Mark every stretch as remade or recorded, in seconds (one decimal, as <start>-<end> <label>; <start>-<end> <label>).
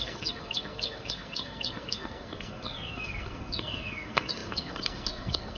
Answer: 0.0-5.6 remade